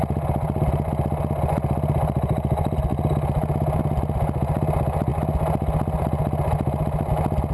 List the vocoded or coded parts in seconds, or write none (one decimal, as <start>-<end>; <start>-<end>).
none